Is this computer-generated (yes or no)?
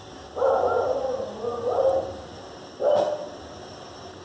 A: no